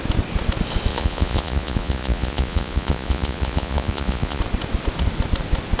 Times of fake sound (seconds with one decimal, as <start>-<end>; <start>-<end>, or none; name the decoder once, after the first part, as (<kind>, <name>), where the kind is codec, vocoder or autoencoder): 0.9-4.4 (vocoder, Vocos)

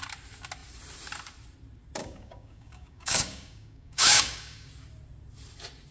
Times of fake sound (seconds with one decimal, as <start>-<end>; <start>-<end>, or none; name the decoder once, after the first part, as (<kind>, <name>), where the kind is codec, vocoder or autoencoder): 2.0-4.7 (codec, DAC)

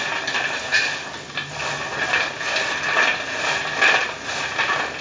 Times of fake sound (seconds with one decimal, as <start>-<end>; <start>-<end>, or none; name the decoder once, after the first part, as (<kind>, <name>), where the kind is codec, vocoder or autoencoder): none

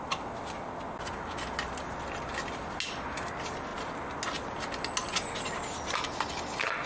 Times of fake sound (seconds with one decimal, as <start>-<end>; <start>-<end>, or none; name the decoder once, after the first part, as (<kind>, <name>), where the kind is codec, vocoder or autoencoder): none

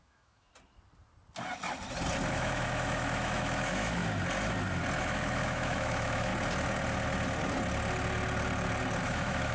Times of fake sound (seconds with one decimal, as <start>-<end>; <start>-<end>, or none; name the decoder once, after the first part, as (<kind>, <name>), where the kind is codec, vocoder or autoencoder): 0.0-0.5 (autoencoder, DAC-VAE); 2.3-4.0; 5.0-6.3; 9.0-9.5

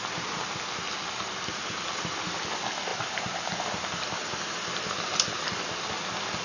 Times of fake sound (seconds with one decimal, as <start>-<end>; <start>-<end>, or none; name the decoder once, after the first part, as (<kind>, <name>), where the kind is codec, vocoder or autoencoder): 2.9-3.5 (vocoder, BigVGAN v2)